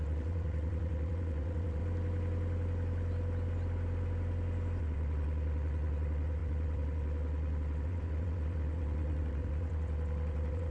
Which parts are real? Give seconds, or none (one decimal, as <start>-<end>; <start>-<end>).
1.8-4.8

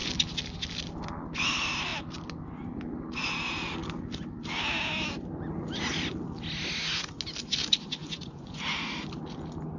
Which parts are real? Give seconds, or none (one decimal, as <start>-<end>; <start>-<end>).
0.0-8.0; 8.6-9.8

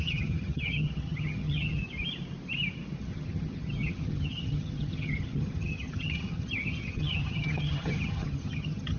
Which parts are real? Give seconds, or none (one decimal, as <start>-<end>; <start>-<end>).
1.8-3.0

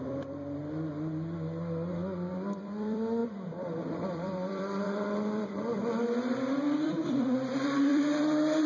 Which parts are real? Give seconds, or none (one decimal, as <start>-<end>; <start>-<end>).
0.6-2.3

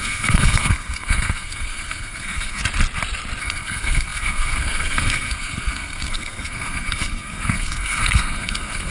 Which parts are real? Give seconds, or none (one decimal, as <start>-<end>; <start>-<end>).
2.6-3.4

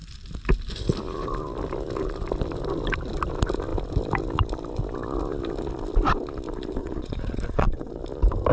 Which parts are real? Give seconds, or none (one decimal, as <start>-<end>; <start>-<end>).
0.0-6.8; 7.9-8.5